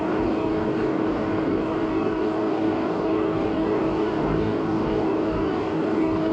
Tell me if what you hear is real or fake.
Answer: fake